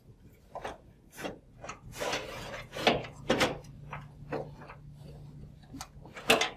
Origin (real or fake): real